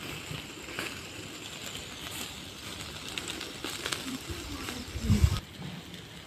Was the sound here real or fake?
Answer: real